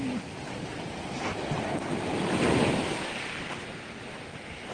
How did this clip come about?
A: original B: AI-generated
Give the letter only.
A